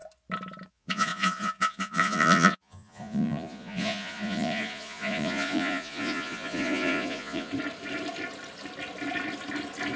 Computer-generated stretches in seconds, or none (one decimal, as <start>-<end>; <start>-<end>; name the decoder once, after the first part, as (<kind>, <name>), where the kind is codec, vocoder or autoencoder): 0.7-7.5 (vocoder, Vocos)